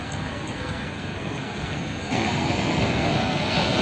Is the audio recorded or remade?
remade